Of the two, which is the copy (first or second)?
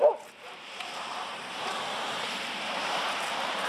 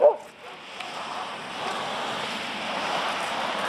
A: first